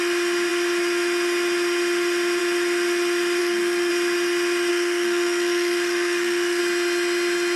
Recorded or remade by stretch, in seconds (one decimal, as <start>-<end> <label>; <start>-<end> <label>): 0.0-3.4 recorded; 3.4-3.9 remade; 3.9-4.7 recorded; 4.7-6.6 remade; 6.6-7.6 recorded